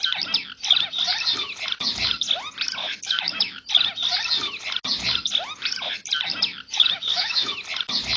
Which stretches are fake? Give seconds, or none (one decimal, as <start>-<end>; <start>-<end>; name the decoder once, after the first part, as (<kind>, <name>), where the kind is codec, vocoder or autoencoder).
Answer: 2.8-3.7 (autoencoder, DAC-VAE); 6.7-7.5